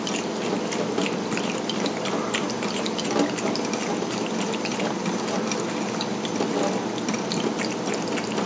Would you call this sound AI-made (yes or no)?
no